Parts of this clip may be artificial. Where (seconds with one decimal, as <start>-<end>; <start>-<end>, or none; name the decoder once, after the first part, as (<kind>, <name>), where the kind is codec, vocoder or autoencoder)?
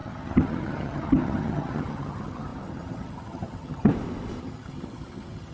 0.0-3.9 (vocoder, HiFi-GAN); 4.4-5.5